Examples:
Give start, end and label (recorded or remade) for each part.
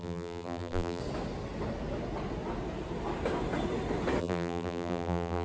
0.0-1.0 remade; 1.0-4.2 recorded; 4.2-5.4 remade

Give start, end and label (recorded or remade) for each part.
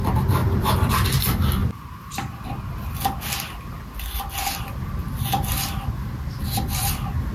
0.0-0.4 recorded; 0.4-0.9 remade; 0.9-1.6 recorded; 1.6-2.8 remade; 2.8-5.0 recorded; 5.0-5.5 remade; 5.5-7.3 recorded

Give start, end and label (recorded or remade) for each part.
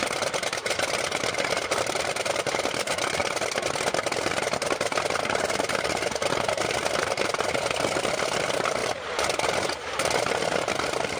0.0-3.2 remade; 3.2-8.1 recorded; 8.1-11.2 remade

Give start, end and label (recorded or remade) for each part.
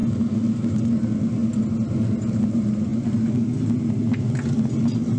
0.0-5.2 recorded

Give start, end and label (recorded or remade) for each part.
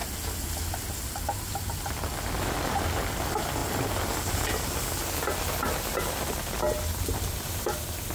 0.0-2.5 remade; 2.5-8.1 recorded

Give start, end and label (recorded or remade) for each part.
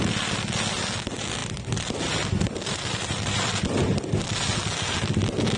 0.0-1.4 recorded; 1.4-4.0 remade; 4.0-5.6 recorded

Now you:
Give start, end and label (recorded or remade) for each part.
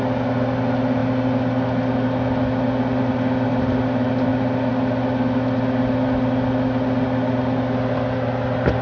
0.0-8.8 recorded